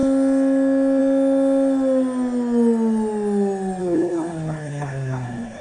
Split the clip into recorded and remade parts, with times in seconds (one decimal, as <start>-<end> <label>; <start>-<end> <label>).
0.0-3.8 recorded; 3.8-5.6 remade